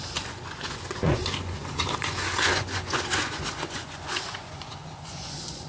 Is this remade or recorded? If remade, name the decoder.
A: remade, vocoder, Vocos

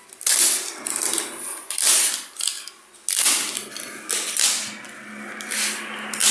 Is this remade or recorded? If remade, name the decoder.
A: recorded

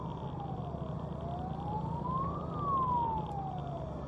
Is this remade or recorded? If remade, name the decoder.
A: recorded